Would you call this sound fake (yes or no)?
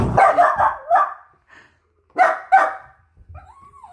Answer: no